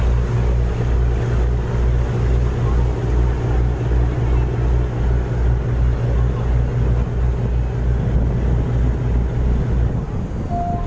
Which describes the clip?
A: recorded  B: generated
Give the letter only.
A